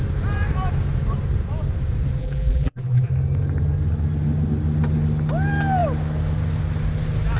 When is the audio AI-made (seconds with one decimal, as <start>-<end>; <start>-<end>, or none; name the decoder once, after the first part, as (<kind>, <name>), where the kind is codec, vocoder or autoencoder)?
2.2-3.1 (vocoder, BigVGAN v2)